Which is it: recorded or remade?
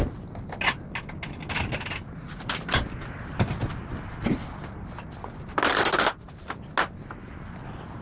recorded